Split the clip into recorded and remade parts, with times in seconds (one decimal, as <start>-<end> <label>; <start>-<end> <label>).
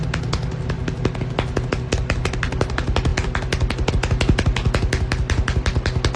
0.0-6.2 recorded